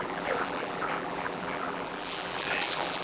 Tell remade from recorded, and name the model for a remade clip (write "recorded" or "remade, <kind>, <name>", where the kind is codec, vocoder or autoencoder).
remade, vocoder, BigVGAN v2